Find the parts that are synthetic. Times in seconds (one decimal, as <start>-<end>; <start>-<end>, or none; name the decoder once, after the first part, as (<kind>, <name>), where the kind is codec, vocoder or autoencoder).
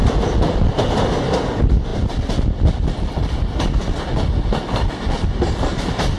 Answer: none